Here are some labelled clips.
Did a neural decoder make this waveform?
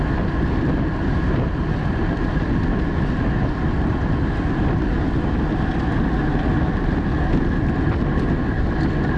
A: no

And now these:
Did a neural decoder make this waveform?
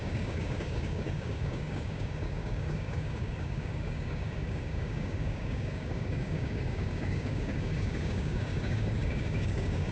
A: yes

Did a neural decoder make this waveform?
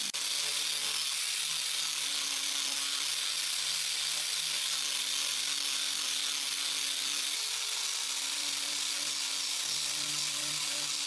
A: no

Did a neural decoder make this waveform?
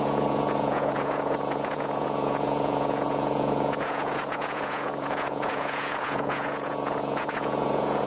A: yes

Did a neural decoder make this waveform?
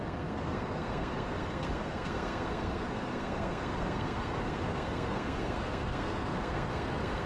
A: yes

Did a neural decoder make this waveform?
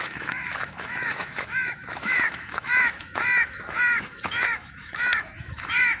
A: yes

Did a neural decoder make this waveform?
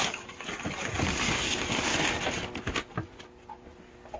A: no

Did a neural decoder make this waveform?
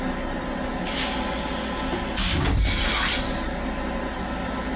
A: no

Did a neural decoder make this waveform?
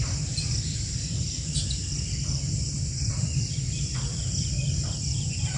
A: yes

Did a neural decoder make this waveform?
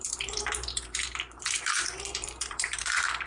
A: yes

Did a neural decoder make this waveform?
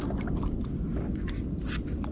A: no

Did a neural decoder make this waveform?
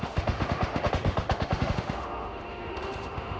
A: yes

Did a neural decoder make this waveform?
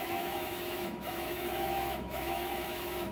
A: yes